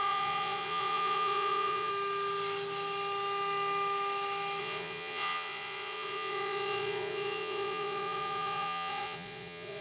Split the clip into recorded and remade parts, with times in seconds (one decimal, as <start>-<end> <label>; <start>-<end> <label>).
0.0-1.9 remade; 1.9-4.6 recorded; 4.6-9.8 remade